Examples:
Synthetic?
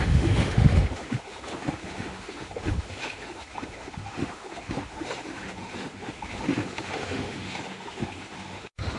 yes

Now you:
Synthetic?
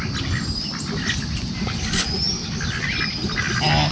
no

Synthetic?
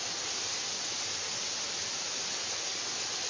no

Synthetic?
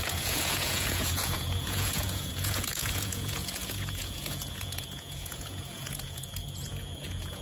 yes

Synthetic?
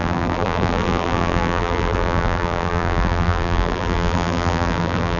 yes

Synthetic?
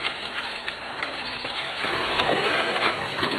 yes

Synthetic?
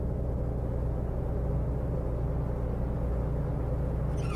no